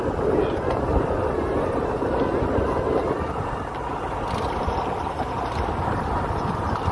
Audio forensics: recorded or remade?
recorded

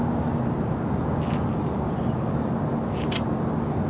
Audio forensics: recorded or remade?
recorded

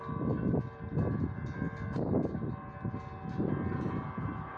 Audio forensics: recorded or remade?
recorded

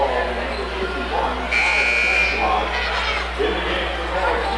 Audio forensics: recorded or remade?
recorded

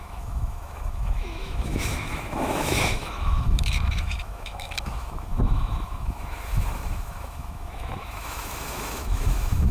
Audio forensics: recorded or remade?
remade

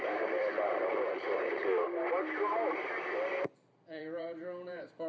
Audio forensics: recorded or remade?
remade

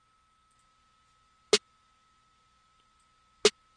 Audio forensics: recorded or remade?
recorded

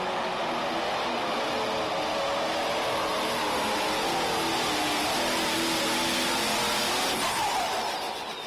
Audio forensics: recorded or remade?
recorded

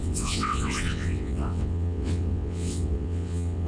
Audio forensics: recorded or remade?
remade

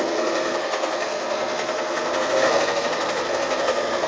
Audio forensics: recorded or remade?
remade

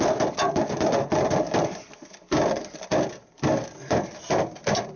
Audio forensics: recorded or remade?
remade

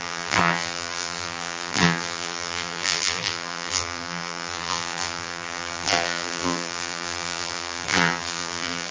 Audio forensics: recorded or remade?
remade